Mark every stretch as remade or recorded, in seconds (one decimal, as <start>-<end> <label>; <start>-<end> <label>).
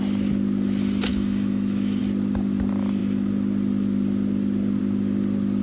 0.0-1.1 recorded; 1.1-2.0 remade; 2.0-5.6 recorded